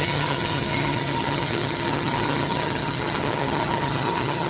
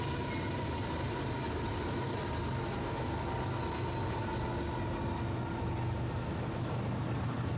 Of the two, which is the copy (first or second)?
first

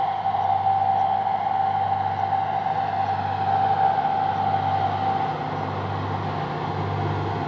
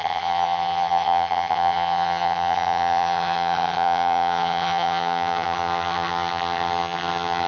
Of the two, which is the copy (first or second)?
second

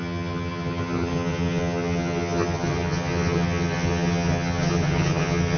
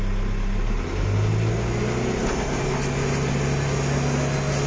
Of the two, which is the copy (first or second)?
first